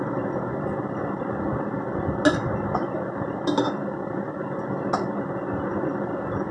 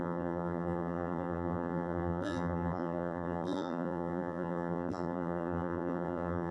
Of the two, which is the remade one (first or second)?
second